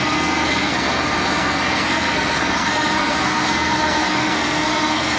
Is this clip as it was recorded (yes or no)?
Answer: no